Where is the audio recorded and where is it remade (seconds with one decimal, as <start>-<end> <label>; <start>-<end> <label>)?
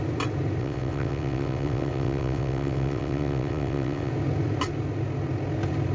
0.0-0.6 recorded; 0.6-4.1 remade; 4.1-5.9 recorded